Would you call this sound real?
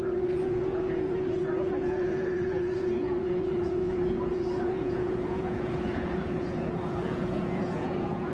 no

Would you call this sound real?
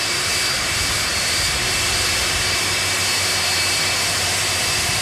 yes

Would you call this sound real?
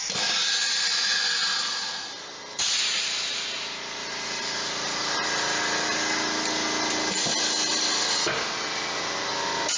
yes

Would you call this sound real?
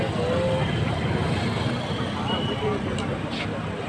yes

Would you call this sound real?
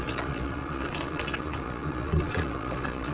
no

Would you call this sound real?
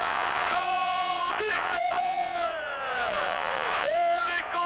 no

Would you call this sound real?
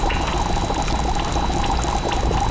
yes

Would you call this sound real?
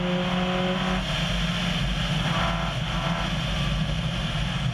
yes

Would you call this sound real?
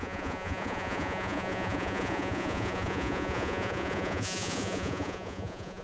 no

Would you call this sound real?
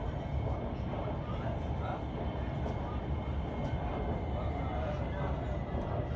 yes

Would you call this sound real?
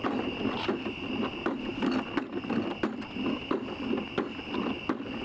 yes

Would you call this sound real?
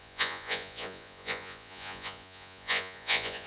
no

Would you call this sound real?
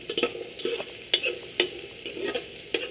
yes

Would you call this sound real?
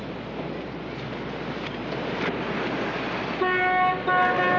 yes